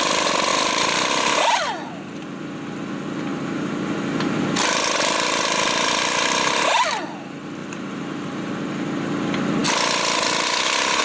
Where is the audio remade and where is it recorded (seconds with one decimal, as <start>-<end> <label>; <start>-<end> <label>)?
0.0-0.5 recorded; 0.5-1.9 remade; 1.9-3.3 recorded; 3.3-4.4 remade; 4.4-7.6 recorded; 7.6-8.5 remade; 8.5-11.0 recorded